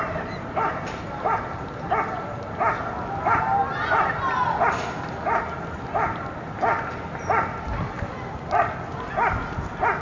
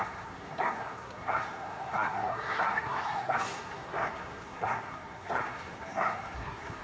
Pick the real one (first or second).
first